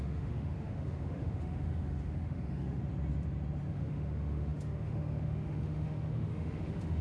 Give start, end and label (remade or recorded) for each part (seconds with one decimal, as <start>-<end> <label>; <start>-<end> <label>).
0.0-2.8 remade; 2.8-3.7 recorded; 3.7-7.0 remade